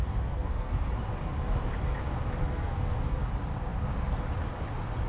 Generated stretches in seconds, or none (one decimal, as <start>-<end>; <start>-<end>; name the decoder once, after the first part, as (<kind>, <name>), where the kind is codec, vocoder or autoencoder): 0.0-0.9 (codec, SNAC); 2.4-3.2